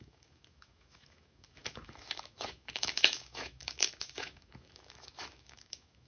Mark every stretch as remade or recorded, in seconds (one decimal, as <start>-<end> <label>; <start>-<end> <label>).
0.0-6.1 remade

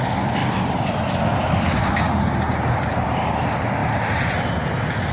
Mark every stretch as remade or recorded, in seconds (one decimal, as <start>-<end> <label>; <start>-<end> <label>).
0.0-1.8 recorded; 1.8-3.4 remade; 3.4-5.1 recorded

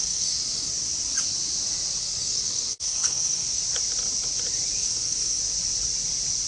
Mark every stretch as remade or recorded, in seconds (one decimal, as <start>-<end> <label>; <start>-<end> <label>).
0.0-0.7 remade; 0.7-2.0 recorded; 2.0-3.6 remade; 3.6-4.8 recorded; 4.8-5.4 remade; 5.4-6.5 recorded

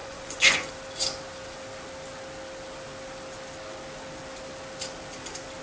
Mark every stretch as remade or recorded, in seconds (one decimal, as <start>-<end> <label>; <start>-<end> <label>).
0.0-0.7 remade; 0.7-5.6 recorded

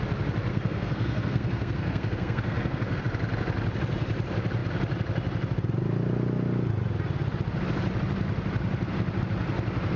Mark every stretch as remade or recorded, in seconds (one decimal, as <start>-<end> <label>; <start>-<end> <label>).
0.0-0.5 recorded; 0.5-3.0 remade; 3.0-10.0 recorded

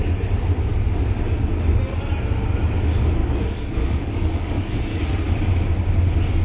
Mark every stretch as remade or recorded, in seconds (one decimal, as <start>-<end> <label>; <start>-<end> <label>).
0.0-3.2 recorded; 3.2-4.8 remade; 4.8-6.4 recorded

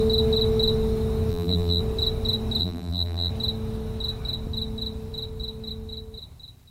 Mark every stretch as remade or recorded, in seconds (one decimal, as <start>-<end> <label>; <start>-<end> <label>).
0.0-1.3 recorded; 1.3-1.8 remade; 1.8-2.6 recorded; 2.6-3.3 remade; 3.3-6.7 recorded